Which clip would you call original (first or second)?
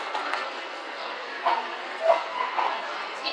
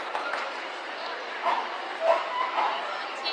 second